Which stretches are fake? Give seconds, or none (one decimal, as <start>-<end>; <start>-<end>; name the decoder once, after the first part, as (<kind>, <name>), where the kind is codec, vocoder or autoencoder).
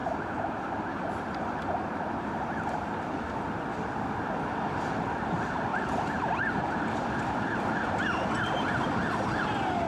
0.0-3.1 (vocoder, BigVGAN v2); 5.7-8.0